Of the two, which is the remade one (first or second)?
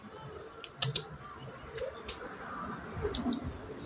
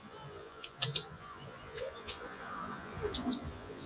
second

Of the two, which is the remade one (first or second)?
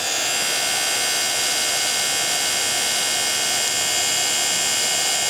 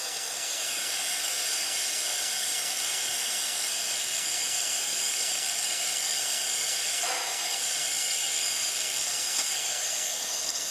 second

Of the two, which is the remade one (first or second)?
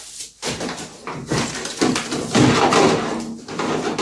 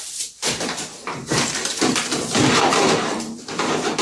second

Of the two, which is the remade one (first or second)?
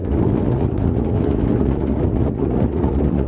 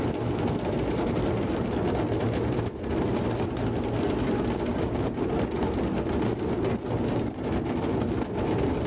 first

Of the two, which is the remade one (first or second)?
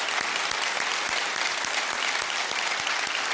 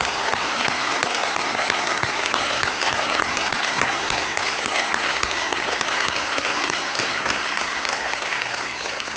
second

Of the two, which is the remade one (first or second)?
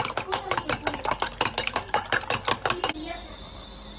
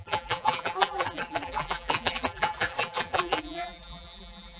second